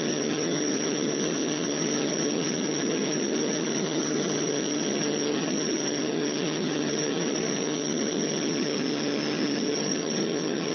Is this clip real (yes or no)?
no